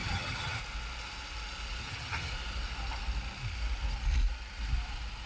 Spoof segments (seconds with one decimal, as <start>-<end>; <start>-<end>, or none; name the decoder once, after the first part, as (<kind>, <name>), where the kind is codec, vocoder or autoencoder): 0.0-0.6 (vocoder, HiFi-GAN); 1.8-2.3